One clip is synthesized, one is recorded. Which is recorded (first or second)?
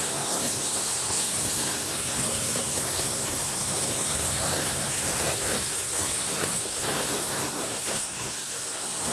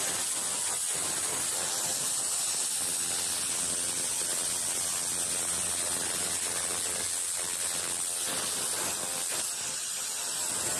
second